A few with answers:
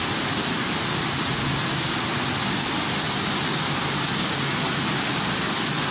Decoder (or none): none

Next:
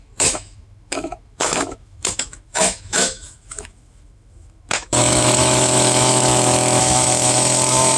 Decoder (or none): autoencoder, DAC-VAE